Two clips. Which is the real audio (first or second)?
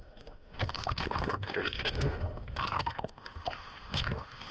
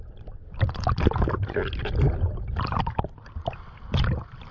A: second